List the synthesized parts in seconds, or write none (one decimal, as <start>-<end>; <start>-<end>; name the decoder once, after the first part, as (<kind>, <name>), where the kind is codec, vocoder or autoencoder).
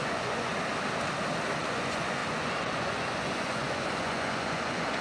0.0-0.5 (vocoder, Vocos); 1.6-5.0